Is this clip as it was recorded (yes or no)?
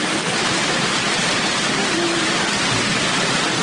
yes